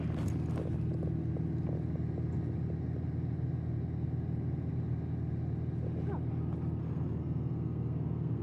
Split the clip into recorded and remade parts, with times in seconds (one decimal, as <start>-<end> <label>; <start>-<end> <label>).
0.0-6.8 recorded; 6.8-8.4 remade